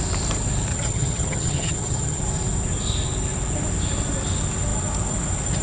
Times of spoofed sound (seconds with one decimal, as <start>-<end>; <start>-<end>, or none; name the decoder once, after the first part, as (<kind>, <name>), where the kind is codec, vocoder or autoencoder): 0.7-2.2 (vocoder, HiFi-GAN)